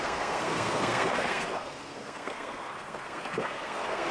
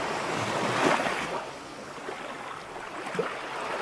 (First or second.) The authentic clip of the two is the second